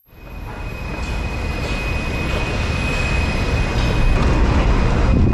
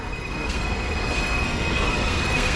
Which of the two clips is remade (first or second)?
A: second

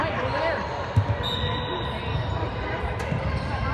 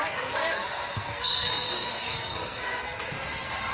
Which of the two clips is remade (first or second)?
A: second